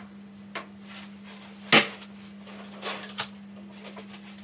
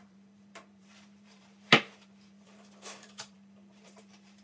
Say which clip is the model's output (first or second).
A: second